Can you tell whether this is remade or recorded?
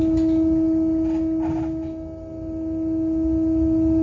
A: recorded